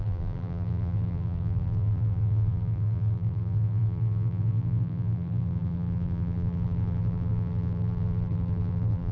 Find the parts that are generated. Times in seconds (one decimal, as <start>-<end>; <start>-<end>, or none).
0.0-9.1